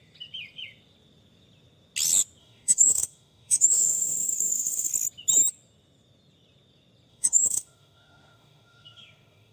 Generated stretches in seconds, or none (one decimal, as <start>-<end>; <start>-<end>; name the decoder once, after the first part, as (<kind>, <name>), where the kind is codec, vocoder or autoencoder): 2.4-4.9 (autoencoder, DAC-VAE); 7.1-9.5